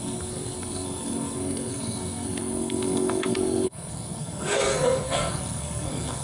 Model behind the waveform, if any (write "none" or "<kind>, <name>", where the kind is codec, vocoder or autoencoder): codec, SNAC